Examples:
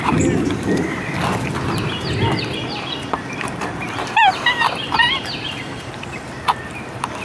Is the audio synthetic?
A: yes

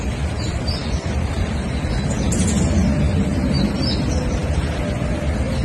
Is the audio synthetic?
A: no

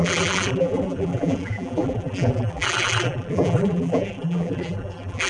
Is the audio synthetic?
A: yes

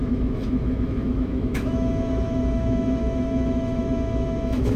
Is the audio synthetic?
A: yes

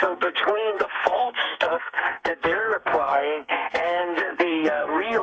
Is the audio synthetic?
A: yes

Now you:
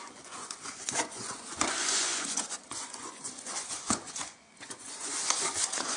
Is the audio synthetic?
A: yes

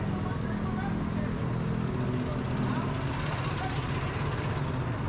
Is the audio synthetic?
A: no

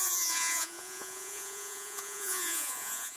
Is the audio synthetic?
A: yes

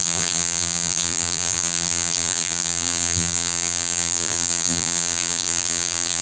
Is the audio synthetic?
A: yes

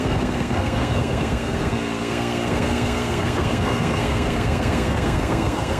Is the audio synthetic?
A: yes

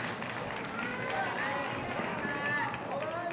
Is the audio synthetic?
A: no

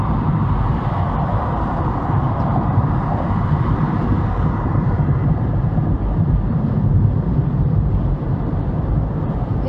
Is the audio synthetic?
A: yes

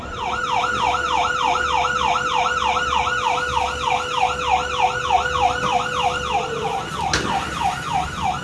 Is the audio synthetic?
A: no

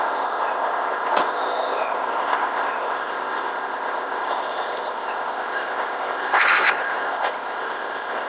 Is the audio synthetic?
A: yes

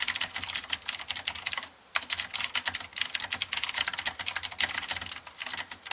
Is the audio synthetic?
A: no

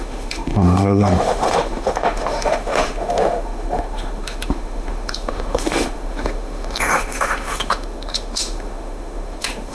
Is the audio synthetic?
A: yes